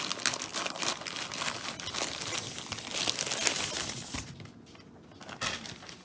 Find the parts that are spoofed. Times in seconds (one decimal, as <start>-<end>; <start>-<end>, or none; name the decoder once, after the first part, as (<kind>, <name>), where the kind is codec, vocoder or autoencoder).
none